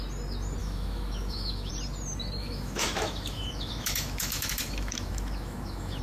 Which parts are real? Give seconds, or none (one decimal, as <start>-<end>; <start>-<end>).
0.0-0.6; 1.7-2.4